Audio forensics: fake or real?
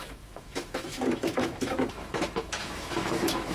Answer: fake